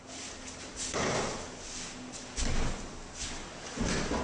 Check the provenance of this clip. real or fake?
real